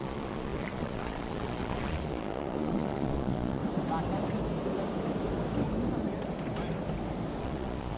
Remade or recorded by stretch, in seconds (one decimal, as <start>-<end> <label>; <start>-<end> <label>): 0.0-3.6 remade; 3.6-7.4 recorded; 7.4-8.0 remade